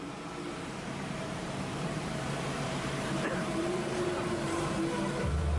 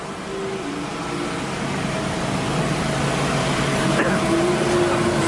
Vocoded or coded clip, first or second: first